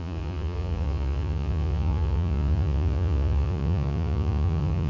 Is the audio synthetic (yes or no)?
yes